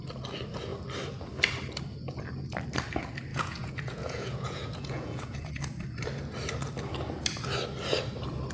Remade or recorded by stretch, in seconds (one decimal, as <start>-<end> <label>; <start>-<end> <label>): 0.0-3.3 recorded; 3.3-5.5 remade; 5.5-8.5 recorded